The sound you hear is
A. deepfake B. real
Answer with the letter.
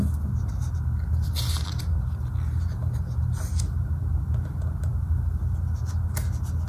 B